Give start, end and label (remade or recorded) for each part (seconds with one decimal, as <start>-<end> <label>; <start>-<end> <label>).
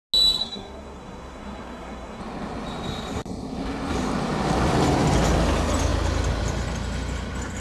0.0-0.4 recorded; 0.4-2.2 remade; 2.2-7.6 recorded